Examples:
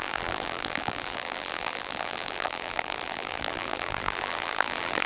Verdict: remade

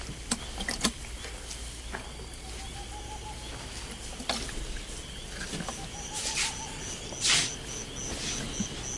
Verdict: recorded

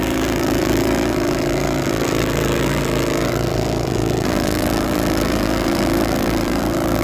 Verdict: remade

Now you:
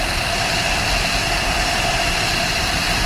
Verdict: recorded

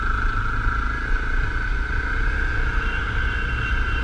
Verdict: recorded